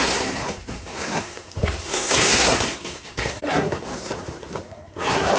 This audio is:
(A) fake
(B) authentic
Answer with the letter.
A